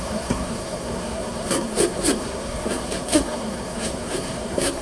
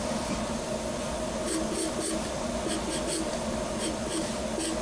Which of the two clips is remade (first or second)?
first